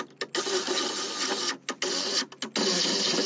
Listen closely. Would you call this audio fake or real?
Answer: real